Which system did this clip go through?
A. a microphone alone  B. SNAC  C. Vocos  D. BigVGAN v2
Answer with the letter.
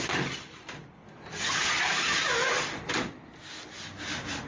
A